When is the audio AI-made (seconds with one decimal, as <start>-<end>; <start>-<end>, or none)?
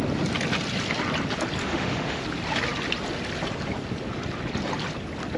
1.6-2.2